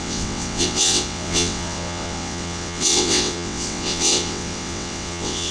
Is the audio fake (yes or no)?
yes